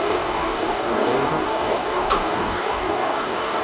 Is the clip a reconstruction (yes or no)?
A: yes